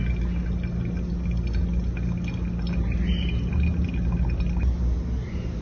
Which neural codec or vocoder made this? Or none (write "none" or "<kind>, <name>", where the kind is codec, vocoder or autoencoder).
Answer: none